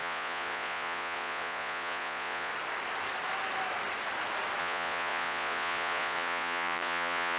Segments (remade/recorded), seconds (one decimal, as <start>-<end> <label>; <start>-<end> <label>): 0.0-2.5 remade; 2.5-4.6 recorded; 4.6-7.4 remade